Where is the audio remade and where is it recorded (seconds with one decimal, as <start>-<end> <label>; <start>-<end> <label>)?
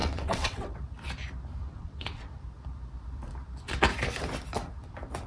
0.0-0.8 remade; 0.8-1.6 recorded; 1.6-2.4 remade; 2.4-5.3 recorded